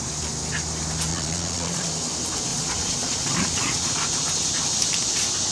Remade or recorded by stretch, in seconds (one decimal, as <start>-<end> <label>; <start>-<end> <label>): 0.0-1.1 recorded; 1.1-1.9 remade; 1.9-2.5 recorded; 2.5-3.9 remade; 3.9-5.5 recorded